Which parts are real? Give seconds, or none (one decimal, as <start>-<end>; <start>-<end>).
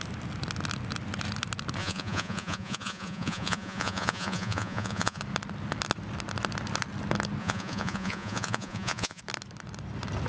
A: 0.0-1.8; 5.2-7.4; 9.2-10.3